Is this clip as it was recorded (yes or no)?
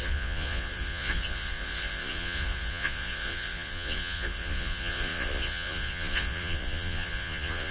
no